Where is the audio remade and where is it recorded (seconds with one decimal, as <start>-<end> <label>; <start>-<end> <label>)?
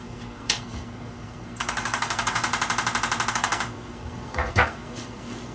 0.0-2.5 remade; 2.5-3.3 recorded; 3.3-5.5 remade